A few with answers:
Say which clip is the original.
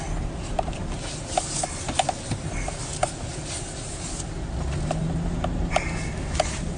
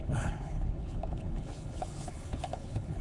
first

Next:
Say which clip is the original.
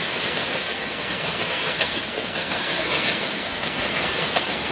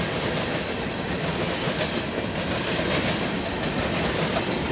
second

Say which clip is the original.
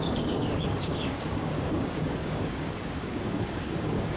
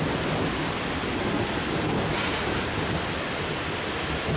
second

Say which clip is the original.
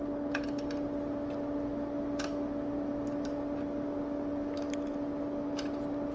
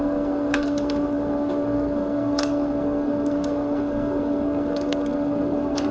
first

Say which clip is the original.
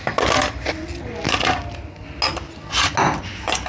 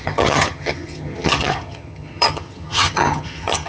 first